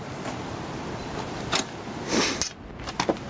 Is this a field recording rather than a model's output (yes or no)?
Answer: yes